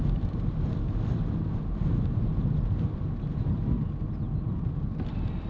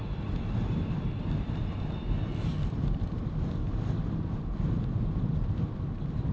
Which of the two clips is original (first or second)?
first